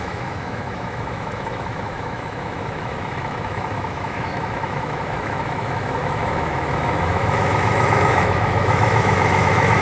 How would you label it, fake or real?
fake